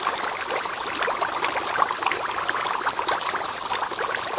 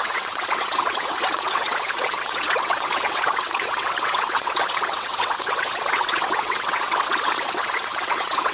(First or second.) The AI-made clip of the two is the second